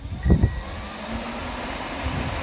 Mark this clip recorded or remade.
recorded